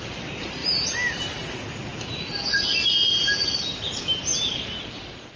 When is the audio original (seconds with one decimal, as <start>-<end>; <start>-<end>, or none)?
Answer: 0.0-5.4